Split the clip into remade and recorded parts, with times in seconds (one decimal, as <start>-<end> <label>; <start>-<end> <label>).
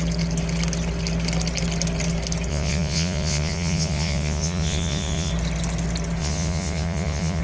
0.0-2.5 recorded; 2.5-5.3 remade; 5.3-6.2 recorded; 6.2-7.4 remade